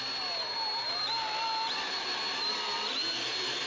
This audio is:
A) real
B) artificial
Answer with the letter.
A